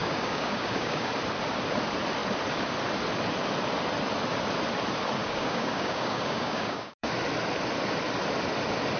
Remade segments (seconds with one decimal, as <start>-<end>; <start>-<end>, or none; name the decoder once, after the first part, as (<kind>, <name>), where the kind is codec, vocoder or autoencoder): 0.0-1.1 (codec, DAC); 5.2-7.1